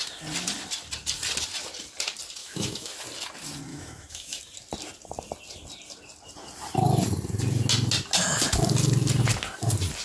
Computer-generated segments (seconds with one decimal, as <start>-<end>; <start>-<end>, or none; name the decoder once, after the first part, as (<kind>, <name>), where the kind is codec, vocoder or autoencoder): 2.4-2.9 (autoencoder, DAC-VAE); 3.7-4.4